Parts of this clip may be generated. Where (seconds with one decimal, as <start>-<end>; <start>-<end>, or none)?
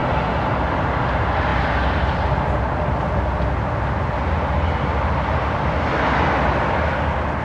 none